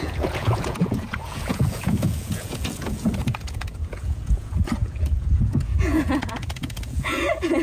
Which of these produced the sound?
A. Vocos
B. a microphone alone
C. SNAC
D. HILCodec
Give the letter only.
A